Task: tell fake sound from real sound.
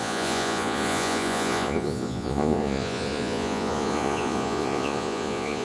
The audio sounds fake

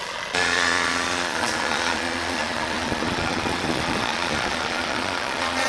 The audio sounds fake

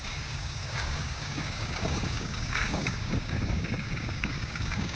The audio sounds fake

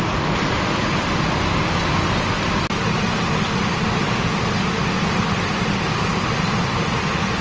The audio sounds real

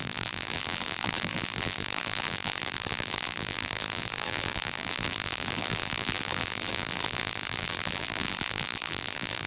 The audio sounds fake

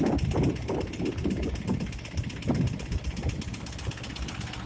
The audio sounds real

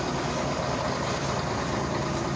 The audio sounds real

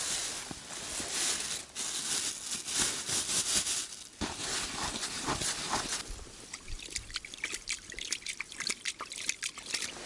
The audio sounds real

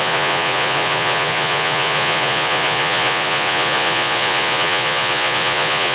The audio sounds fake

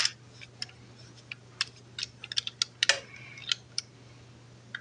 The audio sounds real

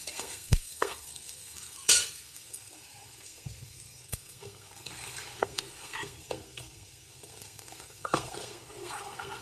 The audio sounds fake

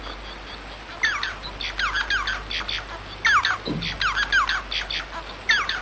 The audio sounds real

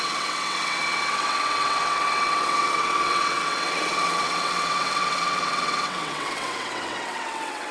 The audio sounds fake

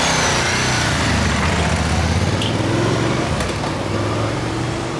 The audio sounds real